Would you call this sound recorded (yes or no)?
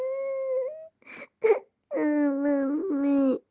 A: yes